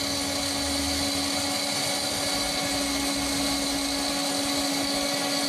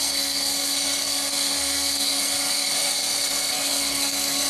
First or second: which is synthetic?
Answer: second